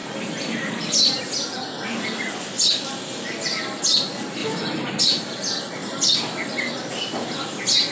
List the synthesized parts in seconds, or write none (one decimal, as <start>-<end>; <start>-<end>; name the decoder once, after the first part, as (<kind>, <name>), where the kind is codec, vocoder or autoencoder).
none